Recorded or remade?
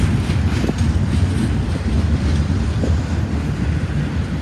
recorded